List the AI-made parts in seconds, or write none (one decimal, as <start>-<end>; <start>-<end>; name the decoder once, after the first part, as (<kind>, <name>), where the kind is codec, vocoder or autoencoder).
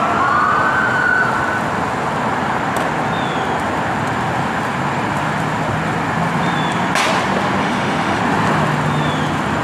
7.6-8.2 (autoencoder, DAC-VAE)